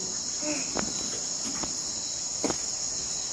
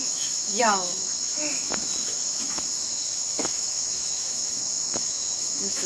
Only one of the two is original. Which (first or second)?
first